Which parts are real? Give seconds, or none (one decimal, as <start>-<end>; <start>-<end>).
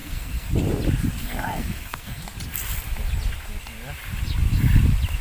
0.5-1.2; 2.2-5.2